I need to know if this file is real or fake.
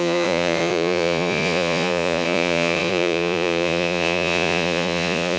fake